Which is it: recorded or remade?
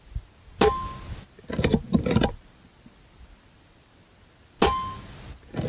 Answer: recorded